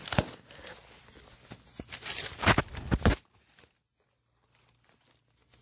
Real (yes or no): yes